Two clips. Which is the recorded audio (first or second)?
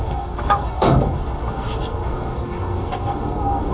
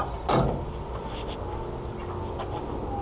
second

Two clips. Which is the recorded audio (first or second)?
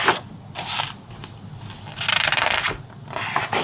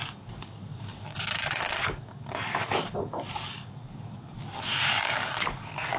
first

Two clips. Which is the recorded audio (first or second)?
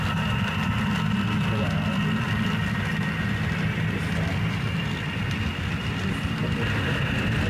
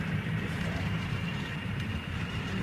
first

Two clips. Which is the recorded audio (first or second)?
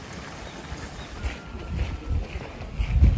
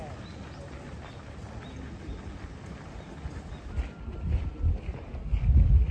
second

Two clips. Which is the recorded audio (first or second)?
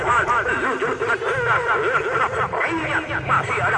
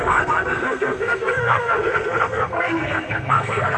first